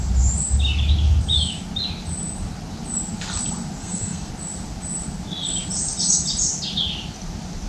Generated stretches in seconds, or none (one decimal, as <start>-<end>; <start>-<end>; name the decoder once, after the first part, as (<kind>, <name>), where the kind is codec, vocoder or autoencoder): 3.8-4.3 (codec, SNAC)